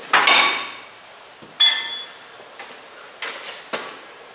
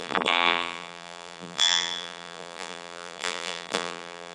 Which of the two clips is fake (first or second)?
second